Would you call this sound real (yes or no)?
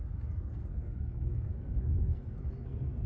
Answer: no